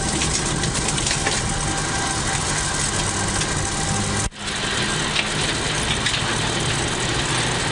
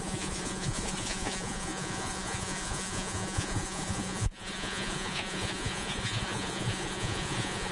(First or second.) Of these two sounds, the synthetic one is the second